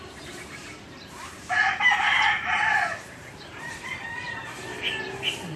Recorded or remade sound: remade